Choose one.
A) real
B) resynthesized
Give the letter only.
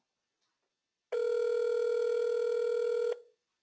A